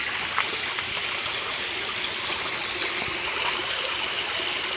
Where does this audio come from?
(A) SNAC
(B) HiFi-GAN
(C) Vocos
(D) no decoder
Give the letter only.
D